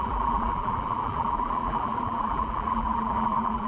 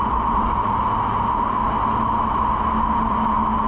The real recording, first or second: second